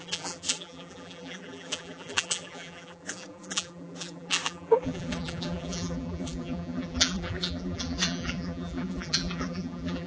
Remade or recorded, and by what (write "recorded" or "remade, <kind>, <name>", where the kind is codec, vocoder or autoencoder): remade, vocoder, BigVGAN v2